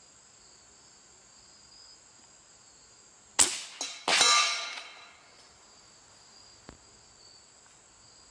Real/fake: real